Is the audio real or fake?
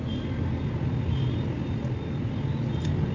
real